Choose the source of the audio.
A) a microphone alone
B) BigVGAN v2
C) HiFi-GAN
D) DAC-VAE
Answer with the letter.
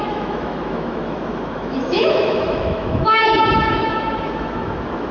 D